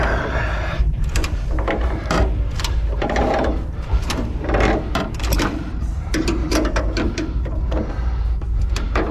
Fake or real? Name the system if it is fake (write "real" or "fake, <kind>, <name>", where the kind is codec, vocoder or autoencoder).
fake, vocoder, BigVGAN v2